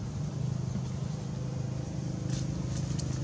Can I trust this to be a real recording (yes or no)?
yes